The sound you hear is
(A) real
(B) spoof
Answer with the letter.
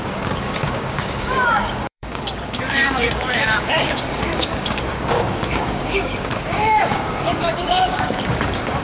B